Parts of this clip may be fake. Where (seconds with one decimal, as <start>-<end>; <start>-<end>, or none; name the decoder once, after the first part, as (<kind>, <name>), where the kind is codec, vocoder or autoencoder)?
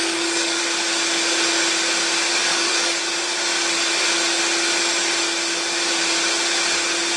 0.0-0.6 (codec, DAC); 2.5-3.0